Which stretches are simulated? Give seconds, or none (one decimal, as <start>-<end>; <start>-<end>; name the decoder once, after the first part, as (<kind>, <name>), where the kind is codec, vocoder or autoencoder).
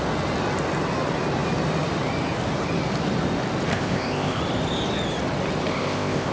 3.7-4.4 (codec, ZipCodec); 5.7-6.3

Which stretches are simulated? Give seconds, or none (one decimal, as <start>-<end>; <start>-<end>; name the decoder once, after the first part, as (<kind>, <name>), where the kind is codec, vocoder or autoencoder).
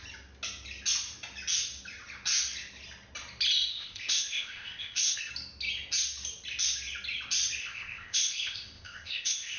3.7-5.3 (codec, ZipCodec); 7.6-9.6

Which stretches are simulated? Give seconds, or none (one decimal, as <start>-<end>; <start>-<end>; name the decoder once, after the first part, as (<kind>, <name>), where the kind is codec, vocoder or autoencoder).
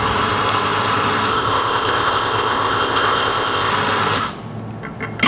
1.3-3.7 (codec, ZipCodec)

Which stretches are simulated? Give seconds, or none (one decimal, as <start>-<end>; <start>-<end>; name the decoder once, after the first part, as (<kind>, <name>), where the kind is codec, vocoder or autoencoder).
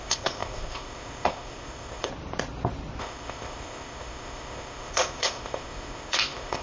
0.0-2.1 (codec, ZipCodec); 3.0-6.6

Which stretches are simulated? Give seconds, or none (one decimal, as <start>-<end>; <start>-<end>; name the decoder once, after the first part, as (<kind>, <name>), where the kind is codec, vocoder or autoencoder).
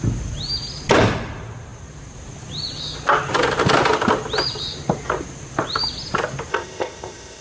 6.5-7.4 (codec, ZipCodec)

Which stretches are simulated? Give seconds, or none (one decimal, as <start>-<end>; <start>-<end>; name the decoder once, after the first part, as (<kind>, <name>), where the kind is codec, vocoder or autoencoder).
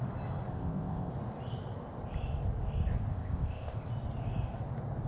0.5-1.1 (codec, ZipCodec); 3.1-3.9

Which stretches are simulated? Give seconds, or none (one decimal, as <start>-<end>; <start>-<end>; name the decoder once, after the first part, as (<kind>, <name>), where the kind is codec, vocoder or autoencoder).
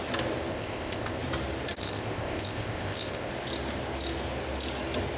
0.5-1.2 (codec, ZipCodec); 1.8-3.3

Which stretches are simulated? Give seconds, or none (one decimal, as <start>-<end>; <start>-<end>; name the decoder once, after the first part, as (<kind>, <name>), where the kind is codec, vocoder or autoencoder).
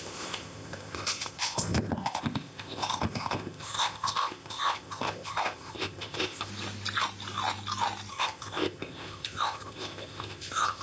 0.0-6.5 (codec, ZipCodec); 8.1-10.8